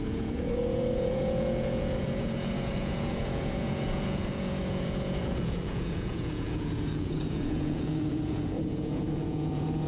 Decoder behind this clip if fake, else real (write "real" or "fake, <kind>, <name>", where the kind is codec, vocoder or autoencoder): fake, vocoder, Vocos